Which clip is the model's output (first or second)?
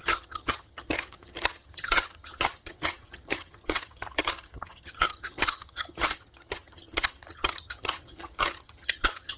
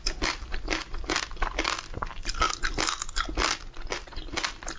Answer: first